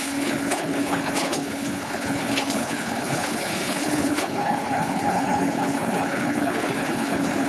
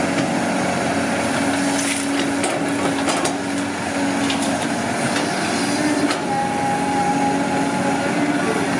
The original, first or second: second